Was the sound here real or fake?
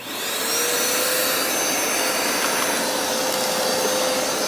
real